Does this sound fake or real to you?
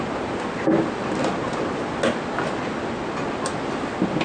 real